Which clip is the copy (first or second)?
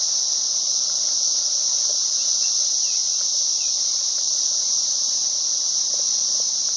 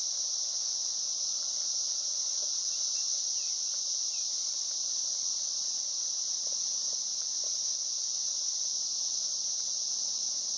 first